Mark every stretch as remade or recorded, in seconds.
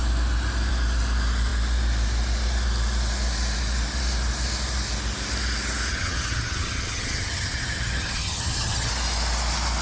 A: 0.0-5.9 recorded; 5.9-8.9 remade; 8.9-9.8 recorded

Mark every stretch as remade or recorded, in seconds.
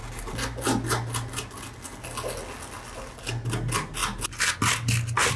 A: 0.0-5.4 recorded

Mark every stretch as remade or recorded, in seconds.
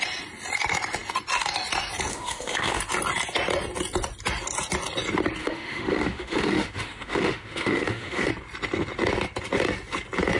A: 0.0-2.1 recorded; 2.1-2.8 remade; 2.8-5.4 recorded; 5.4-8.3 remade; 8.3-10.4 recorded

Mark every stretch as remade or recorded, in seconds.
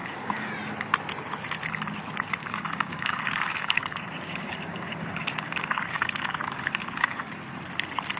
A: 0.0-0.5 remade; 0.5-2.4 recorded; 2.4-7.3 remade; 7.3-8.2 recorded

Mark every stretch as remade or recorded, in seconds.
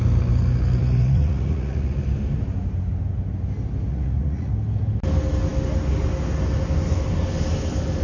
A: 0.0-0.8 recorded; 0.8-2.0 remade; 2.0-3.9 recorded; 3.9-4.5 remade; 4.5-8.0 recorded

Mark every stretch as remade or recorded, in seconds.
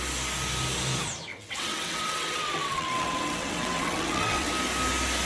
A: 0.0-1.3 recorded; 1.3-4.5 remade; 4.5-5.3 recorded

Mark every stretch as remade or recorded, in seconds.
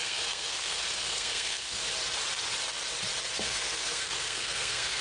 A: 0.0-1.8 remade; 1.8-3.4 recorded; 3.4-5.0 remade